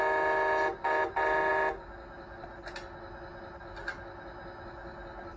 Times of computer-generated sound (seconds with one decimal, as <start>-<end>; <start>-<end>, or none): none